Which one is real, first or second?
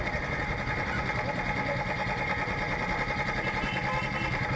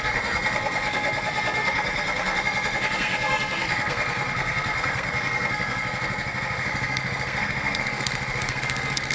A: first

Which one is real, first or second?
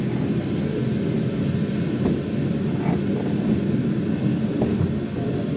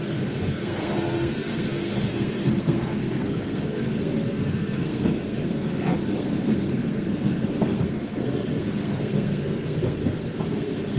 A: first